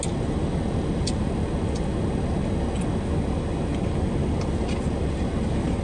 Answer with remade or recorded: recorded